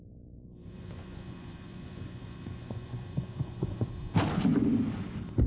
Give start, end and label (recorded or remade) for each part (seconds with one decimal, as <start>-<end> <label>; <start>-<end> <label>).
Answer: 0.0-0.6 recorded; 0.6-3.9 remade; 3.9-5.5 recorded

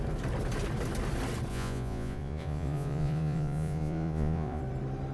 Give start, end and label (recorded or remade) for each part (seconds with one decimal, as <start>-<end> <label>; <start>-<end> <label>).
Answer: 0.0-1.5 recorded; 1.5-4.6 remade; 4.6-5.1 recorded

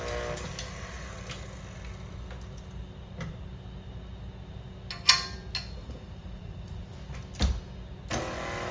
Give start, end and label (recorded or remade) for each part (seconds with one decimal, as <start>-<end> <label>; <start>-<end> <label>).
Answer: 0.0-5.8 recorded; 5.8-6.9 remade; 6.9-8.7 recorded

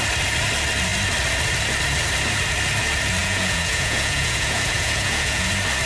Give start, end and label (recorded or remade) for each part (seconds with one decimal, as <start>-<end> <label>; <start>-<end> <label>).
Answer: 0.0-3.2 recorded; 3.2-5.5 remade; 5.5-5.9 recorded

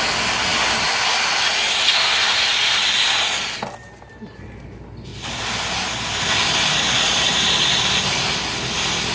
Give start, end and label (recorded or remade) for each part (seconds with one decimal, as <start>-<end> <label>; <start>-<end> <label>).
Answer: 0.0-9.1 recorded